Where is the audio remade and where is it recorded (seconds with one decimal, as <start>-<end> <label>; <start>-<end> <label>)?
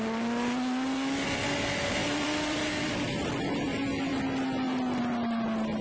0.0-2.0 recorded; 2.0-2.9 remade; 2.9-5.8 recorded